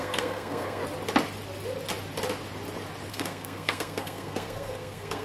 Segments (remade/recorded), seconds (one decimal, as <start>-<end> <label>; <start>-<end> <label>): 0.0-0.8 remade; 0.8-3.1 recorded; 3.1-5.2 remade